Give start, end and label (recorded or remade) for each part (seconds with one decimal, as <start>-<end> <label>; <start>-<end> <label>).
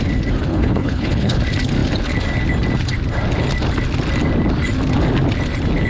0.0-0.5 recorded; 0.5-1.4 remade; 1.4-5.9 recorded